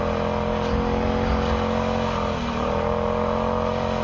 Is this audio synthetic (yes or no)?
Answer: no